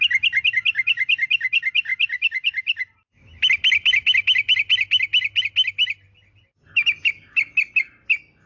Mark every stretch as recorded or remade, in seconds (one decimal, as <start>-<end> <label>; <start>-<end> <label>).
0.0-8.5 recorded